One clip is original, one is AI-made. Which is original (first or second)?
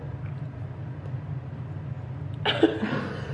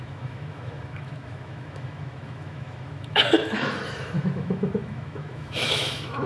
first